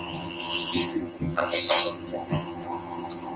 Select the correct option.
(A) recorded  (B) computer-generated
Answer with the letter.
B